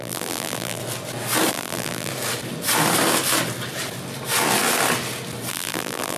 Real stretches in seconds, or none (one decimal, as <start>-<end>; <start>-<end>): 0.8-1.5; 2.1-5.5